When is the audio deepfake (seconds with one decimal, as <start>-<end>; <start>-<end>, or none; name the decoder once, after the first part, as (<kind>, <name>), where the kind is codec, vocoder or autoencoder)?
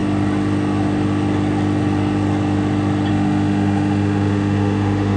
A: 3.1-5.2 (autoencoder, DAC-VAE)